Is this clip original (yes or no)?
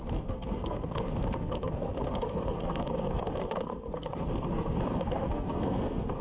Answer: no